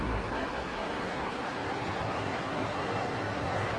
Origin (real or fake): fake